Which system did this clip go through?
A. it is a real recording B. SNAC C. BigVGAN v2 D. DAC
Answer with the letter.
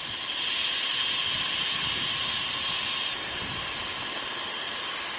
A